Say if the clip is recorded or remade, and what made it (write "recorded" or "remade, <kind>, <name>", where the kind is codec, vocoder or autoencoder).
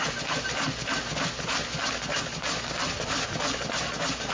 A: recorded